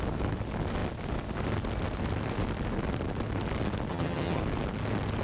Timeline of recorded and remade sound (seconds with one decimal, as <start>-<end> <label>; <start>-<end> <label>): 0.0-3.9 recorded; 3.9-4.4 remade; 4.4-5.2 recorded